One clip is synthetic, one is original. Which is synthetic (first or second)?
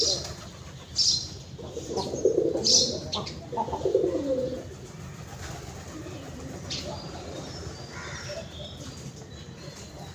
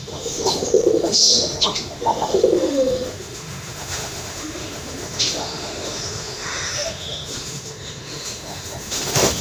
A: second